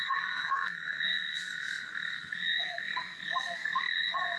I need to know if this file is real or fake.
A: fake